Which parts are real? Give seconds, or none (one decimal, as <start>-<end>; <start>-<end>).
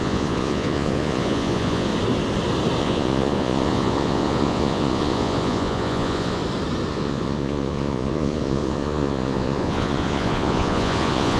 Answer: 1.9-2.8; 6.4-6.9